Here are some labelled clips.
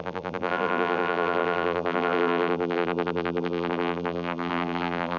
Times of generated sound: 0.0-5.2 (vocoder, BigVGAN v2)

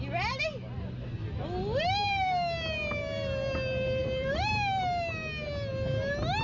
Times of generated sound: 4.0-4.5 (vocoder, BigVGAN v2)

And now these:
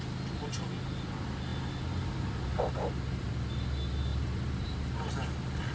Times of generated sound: 4.1-4.8 (vocoder, BigVGAN v2)